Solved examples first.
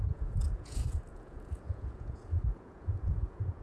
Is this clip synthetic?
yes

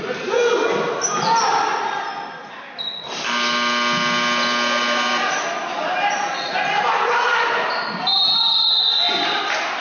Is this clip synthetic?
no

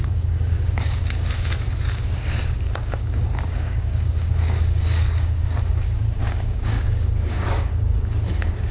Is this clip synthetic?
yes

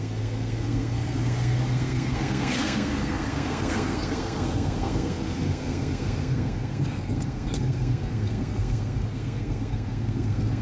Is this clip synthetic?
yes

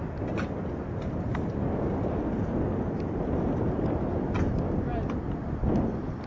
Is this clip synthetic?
no